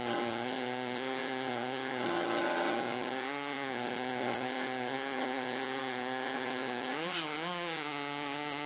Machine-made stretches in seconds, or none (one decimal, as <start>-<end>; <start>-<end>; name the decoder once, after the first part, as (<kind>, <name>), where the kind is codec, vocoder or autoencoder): 0.0-8.7 (vocoder, HiFi-GAN)